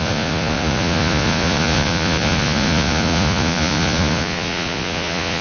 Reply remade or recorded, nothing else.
remade